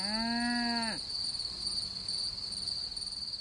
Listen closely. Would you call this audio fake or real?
real